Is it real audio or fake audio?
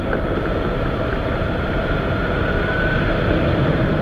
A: real